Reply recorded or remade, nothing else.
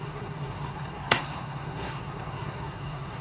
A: remade